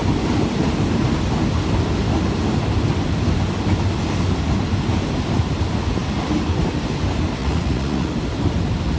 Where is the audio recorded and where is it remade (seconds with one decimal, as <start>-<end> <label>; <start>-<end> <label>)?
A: 0.0-7.4 recorded; 7.4-8.1 remade; 8.1-9.0 recorded